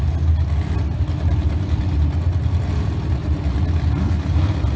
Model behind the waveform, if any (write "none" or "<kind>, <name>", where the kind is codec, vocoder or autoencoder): none